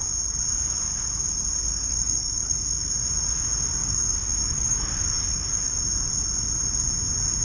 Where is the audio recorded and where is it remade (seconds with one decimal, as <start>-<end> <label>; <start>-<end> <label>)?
0.0-1.7 recorded; 1.7-2.9 remade; 2.9-3.8 recorded; 3.8-5.8 remade; 5.8-7.4 recorded